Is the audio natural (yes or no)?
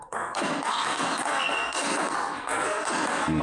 no